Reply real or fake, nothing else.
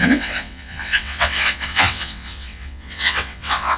fake